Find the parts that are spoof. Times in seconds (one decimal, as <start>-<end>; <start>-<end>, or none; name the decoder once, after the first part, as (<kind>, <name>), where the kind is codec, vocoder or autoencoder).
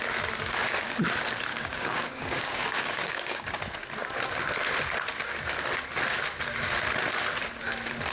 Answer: 1.5-3.6 (codec, DAC)